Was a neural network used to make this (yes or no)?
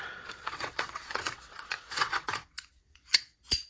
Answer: yes